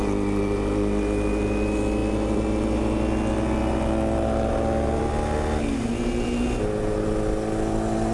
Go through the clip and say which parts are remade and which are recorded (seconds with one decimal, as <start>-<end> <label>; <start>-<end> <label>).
0.0-8.1 recorded